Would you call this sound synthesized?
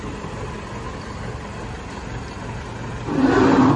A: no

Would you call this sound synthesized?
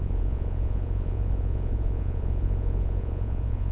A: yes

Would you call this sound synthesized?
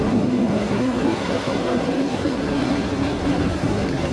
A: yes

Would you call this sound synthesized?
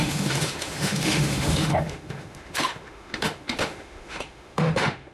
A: yes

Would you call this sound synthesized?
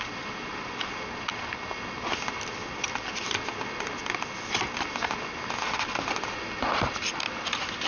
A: no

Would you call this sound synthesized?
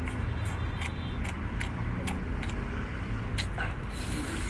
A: no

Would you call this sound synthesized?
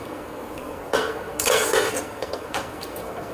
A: yes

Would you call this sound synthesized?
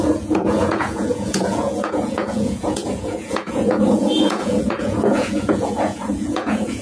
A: yes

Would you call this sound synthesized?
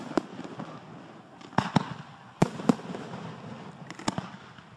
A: no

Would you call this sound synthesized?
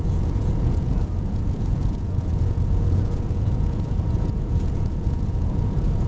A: yes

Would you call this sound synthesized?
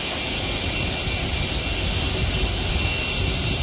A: no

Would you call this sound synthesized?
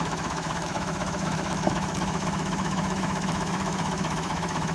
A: yes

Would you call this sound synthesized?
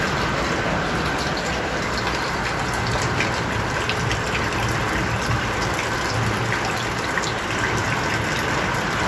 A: no